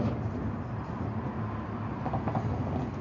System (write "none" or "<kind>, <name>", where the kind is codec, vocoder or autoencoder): none